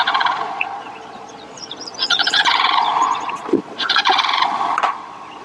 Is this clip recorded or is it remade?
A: remade